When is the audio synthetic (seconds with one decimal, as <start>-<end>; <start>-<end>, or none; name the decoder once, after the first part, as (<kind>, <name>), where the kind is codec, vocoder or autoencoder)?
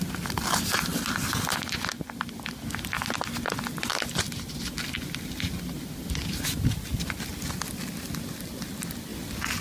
none